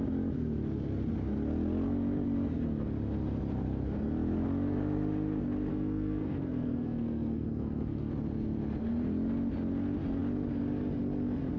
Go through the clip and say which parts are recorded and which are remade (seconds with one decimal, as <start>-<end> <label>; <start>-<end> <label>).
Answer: 0.0-5.7 recorded; 5.7-8.1 remade; 8.1-11.6 recorded